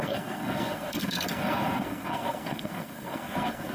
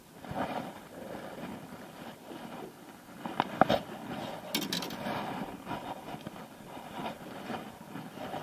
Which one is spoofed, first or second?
first